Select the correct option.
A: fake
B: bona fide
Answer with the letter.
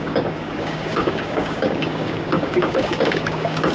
A